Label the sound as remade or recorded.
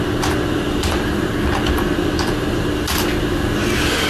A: recorded